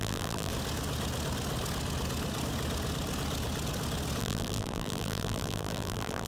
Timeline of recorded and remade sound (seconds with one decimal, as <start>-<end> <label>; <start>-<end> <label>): 0.0-0.5 remade; 0.5-4.2 recorded; 4.2-6.3 remade